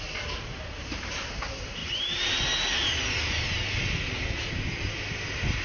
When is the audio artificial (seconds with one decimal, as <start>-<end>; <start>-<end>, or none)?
0.5-1.4